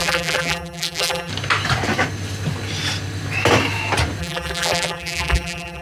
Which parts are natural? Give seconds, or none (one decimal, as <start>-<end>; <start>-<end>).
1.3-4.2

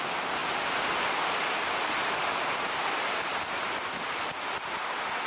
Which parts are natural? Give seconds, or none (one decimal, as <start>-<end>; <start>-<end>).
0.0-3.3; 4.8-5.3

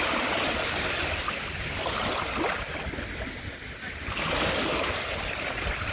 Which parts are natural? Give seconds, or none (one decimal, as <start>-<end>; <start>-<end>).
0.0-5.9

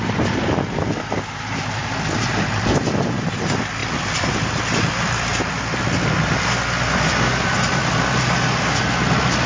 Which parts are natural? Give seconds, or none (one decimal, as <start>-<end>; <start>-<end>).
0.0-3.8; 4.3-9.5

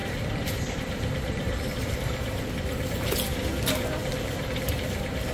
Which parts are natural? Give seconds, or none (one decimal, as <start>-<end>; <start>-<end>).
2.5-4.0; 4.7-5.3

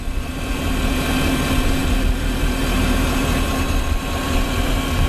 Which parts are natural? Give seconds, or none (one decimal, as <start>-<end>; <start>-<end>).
0.0-5.1

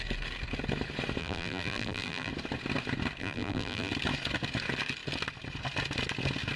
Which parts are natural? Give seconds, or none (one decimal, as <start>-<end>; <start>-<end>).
0.0-1.2; 2.3-3.2; 3.9-6.6